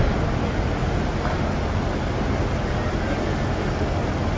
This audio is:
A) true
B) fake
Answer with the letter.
A